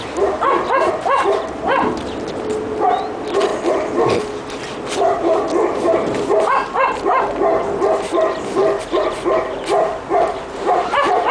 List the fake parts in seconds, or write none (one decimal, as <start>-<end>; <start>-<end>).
none